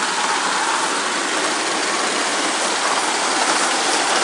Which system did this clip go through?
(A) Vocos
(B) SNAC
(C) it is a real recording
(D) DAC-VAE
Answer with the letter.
C